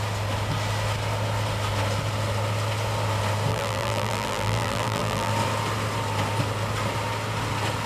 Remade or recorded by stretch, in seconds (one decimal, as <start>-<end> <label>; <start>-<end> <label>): 0.0-3.5 recorded; 3.5-5.3 remade; 5.3-7.9 recorded

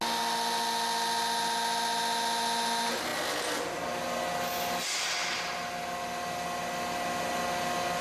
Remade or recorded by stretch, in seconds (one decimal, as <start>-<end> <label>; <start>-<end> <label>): 0.0-8.0 recorded

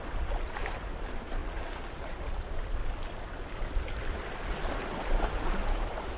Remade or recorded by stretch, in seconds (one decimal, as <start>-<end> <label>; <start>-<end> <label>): 0.0-1.4 remade; 1.4-2.0 recorded; 2.0-2.8 remade; 2.8-5.4 recorded; 5.4-6.2 remade

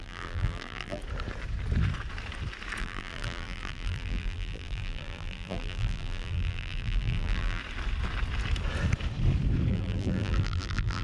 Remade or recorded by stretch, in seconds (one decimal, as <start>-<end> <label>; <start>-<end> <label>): 0.0-1.0 remade; 1.0-2.8 recorded; 2.8-7.6 remade; 7.6-9.7 recorded; 9.7-11.0 remade

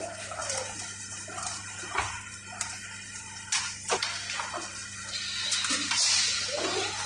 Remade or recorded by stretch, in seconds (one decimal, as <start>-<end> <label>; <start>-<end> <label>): 0.0-0.4 recorded; 0.4-4.1 remade; 4.1-7.1 recorded

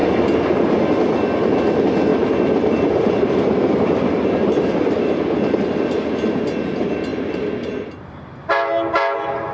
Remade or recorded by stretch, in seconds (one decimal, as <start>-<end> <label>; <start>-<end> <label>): 0.0-0.7 remade; 0.7-2.1 recorded; 2.1-5.8 remade; 5.8-7.1 recorded; 7.1-8.3 remade; 8.3-9.5 recorded

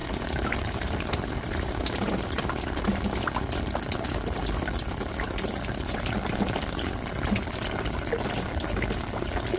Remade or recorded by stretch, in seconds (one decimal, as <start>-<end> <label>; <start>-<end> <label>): 0.0-2.5 remade; 2.5-9.6 recorded